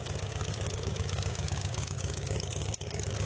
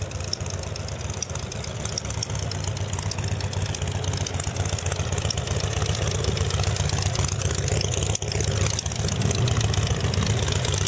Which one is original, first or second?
second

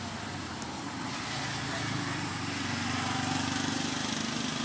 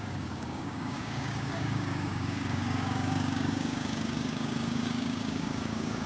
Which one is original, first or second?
first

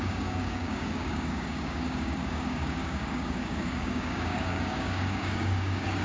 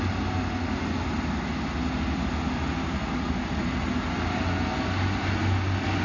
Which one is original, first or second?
second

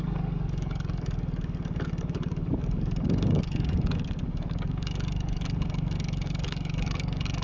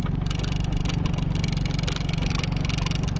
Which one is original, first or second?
second